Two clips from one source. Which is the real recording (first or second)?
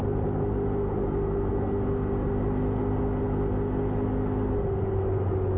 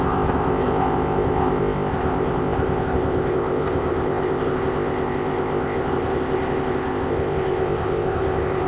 first